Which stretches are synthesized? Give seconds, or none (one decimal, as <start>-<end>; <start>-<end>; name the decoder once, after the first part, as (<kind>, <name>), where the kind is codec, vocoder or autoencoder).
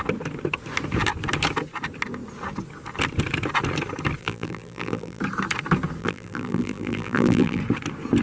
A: 4.2-5.2 (vocoder, BigVGAN v2); 6.0-7.6